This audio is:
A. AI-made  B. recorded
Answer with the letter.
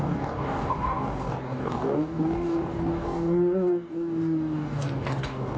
A